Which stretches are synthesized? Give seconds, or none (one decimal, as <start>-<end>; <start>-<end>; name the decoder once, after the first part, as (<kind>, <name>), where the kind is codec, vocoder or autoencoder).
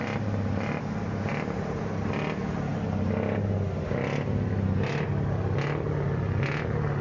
none